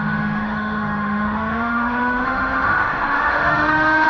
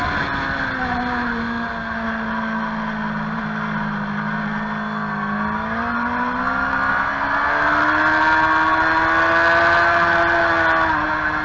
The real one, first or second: second